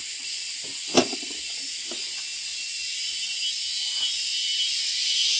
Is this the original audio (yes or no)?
no